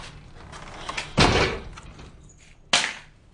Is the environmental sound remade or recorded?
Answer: recorded